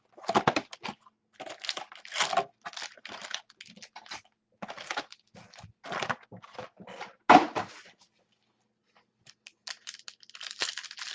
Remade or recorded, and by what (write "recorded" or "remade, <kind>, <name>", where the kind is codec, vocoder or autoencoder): recorded